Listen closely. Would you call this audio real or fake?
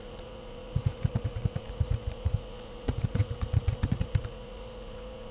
fake